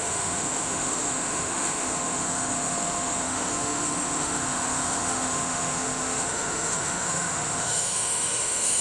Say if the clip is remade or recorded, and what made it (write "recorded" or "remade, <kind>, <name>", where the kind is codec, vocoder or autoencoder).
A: remade, autoencoder, DAC-VAE